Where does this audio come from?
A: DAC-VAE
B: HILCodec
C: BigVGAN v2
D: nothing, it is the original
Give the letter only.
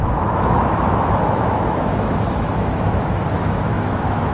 A